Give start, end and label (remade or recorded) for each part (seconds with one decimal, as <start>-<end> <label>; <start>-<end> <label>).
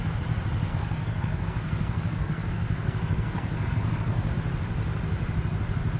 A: 0.0-0.7 recorded; 0.7-4.3 remade; 4.3-6.0 recorded